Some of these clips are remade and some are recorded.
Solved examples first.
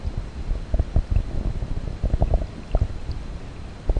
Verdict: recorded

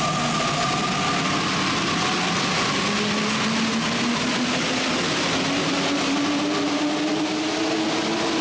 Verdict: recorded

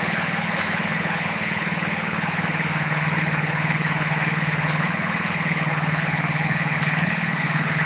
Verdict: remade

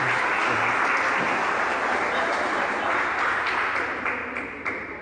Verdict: recorded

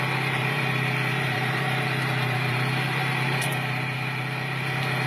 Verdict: remade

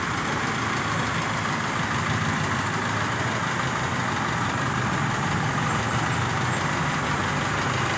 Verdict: recorded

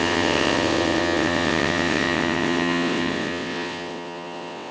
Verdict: remade